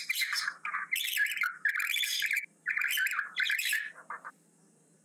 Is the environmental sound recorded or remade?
remade